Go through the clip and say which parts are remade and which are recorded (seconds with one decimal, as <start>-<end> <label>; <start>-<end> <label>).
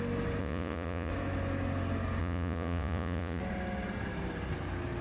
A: 0.0-0.4 recorded; 0.4-1.1 remade; 1.1-2.2 recorded; 2.2-3.4 remade; 3.4-5.0 recorded